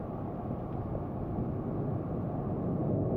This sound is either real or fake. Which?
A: real